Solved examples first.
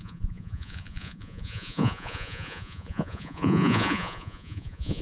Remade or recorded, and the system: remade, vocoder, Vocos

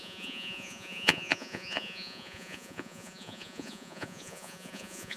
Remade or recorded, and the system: remade, vocoder, Vocos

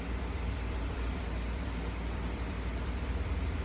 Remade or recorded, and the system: remade, vocoder, BigVGAN v2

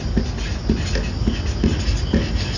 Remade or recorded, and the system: recorded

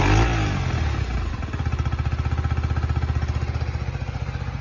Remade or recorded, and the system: recorded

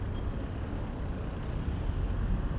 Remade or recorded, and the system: recorded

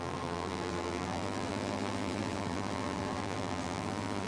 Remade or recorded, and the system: remade, vocoder, BigVGAN v2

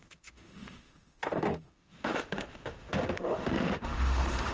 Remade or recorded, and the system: remade, autoencoder, DAC-VAE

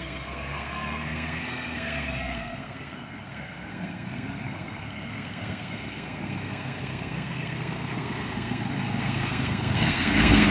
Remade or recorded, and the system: remade, codec, SNAC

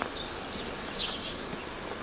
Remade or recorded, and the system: recorded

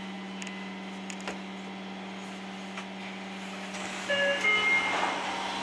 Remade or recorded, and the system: recorded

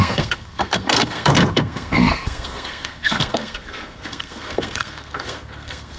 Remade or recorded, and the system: remade, codec, SNAC